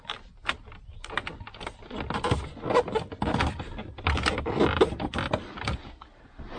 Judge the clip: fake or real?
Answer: real